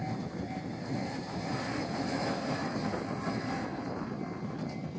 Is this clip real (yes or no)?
no